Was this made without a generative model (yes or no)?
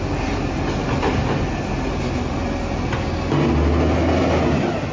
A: yes